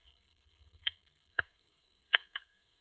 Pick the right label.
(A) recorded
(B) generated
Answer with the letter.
B